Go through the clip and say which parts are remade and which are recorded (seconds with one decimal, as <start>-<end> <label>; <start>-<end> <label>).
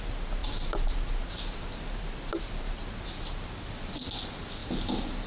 0.0-5.3 recorded